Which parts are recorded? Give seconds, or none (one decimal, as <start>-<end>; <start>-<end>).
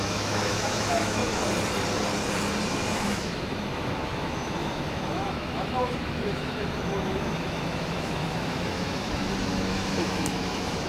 1.2-2.9